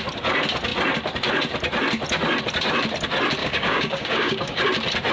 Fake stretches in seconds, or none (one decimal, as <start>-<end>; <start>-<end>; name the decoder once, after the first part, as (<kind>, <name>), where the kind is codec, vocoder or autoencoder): 3.4-4.6 (codec, DAC)